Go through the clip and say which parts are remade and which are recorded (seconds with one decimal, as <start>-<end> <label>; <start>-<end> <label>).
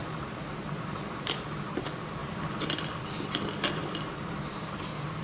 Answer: 0.0-1.6 remade; 1.6-2.2 recorded; 2.2-2.7 remade; 2.7-3.8 recorded; 3.8-5.2 remade